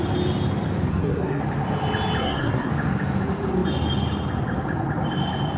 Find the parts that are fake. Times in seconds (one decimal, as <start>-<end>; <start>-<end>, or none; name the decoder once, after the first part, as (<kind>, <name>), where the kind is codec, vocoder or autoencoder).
0.9-1.4 (codec, SNAC); 2.2-2.7